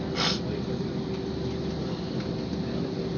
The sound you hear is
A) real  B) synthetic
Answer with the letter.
A